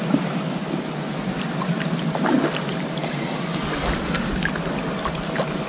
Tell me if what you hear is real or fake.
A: real